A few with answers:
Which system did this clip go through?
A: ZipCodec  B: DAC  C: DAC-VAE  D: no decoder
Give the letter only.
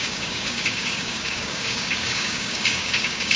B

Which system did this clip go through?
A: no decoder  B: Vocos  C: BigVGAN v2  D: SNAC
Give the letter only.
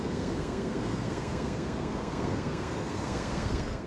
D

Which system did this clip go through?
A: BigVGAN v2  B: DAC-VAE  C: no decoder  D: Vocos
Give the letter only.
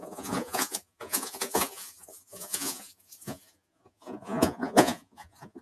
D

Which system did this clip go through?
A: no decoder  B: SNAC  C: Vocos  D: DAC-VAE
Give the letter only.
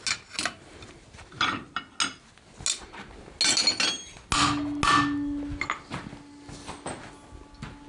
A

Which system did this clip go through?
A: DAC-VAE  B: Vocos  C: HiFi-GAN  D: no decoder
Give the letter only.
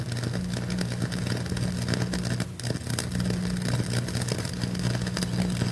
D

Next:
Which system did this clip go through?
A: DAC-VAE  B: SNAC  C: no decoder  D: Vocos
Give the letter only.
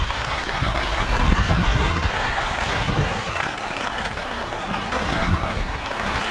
B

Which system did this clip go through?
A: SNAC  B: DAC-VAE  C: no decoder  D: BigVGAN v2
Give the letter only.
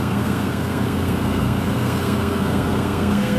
A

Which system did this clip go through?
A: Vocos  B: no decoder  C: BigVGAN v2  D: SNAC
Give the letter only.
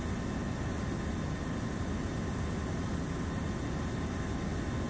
B